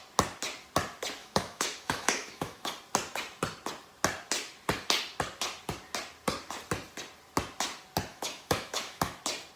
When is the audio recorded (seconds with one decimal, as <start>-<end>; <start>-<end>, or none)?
0.0-1.2; 2.7-8.1; 9.2-9.6